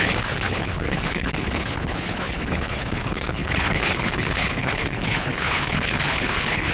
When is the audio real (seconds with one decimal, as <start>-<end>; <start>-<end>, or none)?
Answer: none